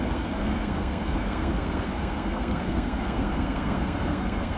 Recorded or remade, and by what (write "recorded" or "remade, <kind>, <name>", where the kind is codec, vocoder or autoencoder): remade, codec, SNAC